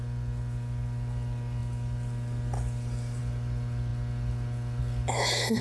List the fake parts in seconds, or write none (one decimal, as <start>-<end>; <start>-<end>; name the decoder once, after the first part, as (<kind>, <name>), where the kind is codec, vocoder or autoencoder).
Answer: none